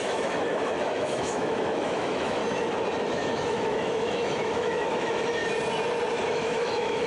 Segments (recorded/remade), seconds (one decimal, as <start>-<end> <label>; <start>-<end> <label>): 0.0-2.4 remade; 2.4-3.1 recorded; 3.1-5.4 remade; 5.4-6.3 recorded; 6.3-7.1 remade